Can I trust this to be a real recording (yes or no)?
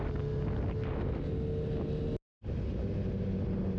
yes